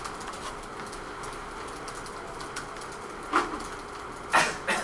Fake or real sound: real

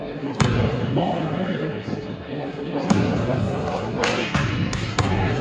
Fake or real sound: fake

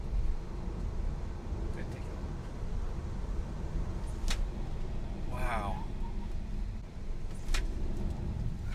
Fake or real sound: real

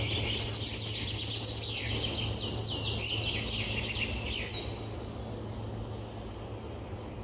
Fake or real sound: real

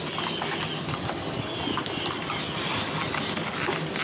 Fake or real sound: real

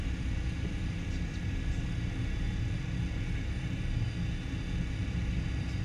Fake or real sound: real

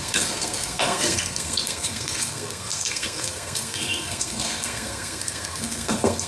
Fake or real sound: fake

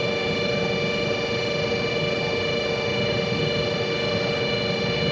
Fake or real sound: real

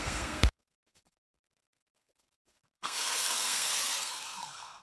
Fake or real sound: fake